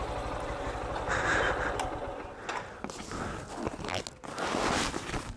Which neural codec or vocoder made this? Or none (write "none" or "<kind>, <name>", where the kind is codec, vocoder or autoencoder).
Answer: none